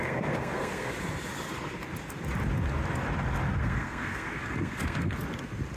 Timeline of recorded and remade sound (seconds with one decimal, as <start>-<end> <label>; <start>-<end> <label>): 0.0-0.9 remade; 0.9-3.6 recorded; 3.6-5.1 remade; 5.1-5.8 recorded

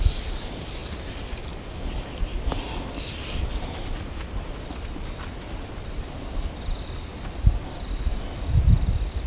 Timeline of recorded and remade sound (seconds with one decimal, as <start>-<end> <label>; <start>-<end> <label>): 0.0-9.3 recorded